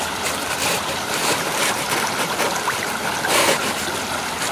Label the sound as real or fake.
fake